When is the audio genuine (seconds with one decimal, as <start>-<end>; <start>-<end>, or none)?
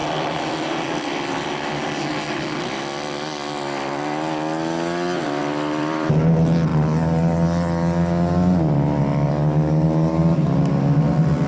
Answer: 1.5-5.4; 6.1-11.5